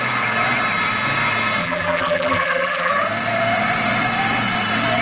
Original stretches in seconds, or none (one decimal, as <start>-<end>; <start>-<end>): 0.0-1.6; 2.9-5.0